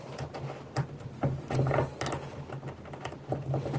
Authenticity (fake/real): real